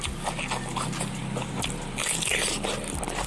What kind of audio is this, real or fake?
real